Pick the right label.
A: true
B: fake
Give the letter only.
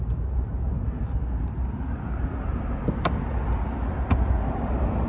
A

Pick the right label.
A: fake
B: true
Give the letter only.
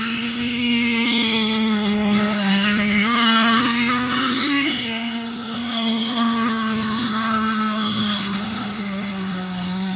A